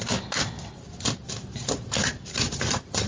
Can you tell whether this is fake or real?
real